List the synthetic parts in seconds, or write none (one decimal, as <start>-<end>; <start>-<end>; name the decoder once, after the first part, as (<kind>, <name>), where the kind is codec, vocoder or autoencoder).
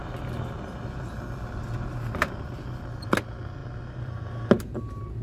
0.0-3.1 (vocoder, BigVGAN v2); 3.6-4.2